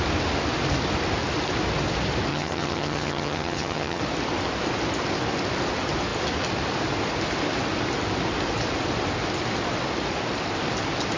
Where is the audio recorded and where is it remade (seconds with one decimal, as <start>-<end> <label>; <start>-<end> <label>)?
0.0-2.3 recorded; 2.3-4.0 remade; 4.0-11.2 recorded